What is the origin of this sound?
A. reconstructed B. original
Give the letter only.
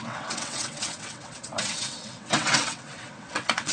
A